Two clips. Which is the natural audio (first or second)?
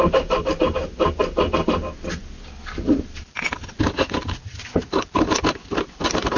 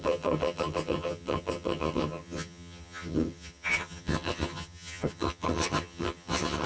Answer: first